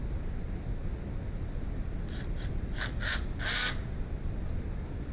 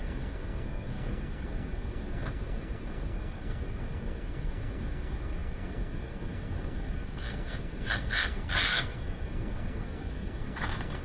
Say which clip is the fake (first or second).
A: second